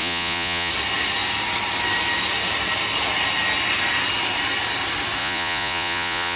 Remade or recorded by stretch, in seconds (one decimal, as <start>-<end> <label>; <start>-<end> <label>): 0.0-0.7 remade; 0.7-5.2 recorded; 5.2-6.4 remade